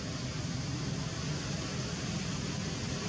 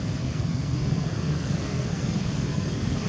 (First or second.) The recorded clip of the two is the first